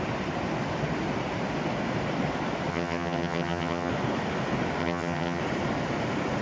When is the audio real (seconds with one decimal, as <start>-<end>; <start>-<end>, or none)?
0.0-2.7; 3.9-4.8; 5.4-6.4